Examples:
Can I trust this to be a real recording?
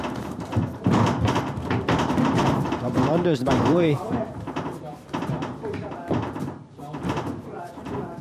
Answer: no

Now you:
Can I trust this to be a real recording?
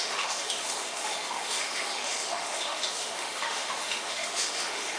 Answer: no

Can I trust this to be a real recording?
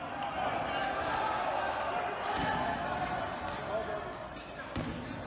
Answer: yes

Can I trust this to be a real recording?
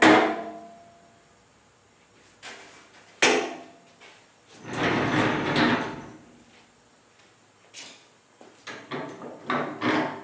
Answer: yes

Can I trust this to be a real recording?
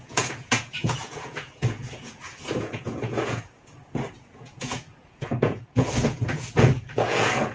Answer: no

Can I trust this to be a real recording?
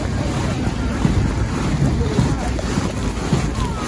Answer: yes